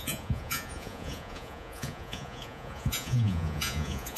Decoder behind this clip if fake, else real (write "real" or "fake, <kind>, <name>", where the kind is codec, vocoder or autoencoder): fake, vocoder, Vocos